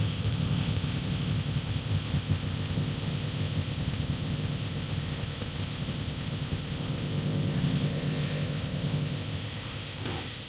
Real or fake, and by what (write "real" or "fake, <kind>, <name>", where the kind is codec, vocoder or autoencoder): fake, codec, ZipCodec